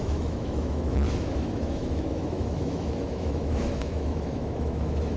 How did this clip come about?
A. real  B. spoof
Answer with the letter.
B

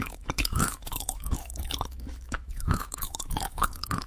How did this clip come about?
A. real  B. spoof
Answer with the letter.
B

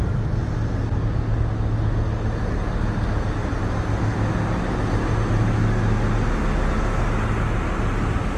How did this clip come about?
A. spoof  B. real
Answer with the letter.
B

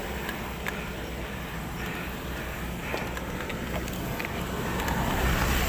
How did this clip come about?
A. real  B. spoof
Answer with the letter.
A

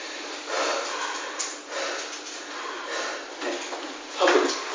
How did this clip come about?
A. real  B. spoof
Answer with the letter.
A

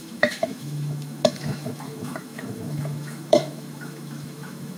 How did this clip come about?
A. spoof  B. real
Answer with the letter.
A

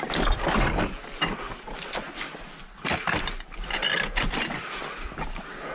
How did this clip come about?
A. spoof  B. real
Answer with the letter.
B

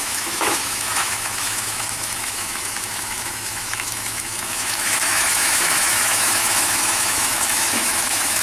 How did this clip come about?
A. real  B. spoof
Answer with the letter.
B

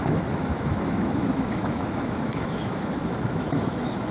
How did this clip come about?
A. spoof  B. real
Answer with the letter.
A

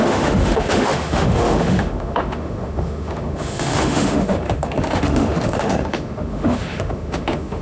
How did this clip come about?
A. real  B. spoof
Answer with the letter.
B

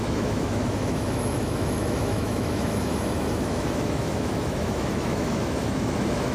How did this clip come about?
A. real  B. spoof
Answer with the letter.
B